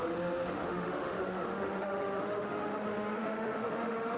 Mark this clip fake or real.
fake